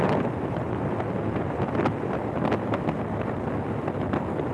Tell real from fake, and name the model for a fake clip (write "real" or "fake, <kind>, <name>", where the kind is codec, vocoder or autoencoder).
real